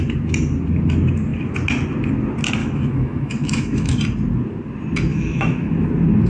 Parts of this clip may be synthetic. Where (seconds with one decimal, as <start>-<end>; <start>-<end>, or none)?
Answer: 2.6-4.0; 5.1-5.7